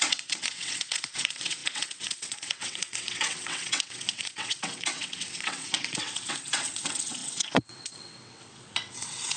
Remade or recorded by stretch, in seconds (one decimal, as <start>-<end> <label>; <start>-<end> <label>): 0.0-9.4 remade